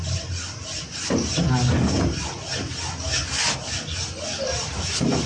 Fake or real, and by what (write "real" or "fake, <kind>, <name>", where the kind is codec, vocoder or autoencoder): real